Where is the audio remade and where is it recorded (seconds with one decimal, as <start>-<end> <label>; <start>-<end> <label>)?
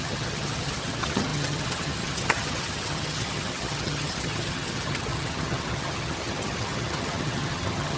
0.0-8.0 remade